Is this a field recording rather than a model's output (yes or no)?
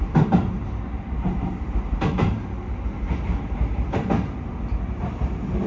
yes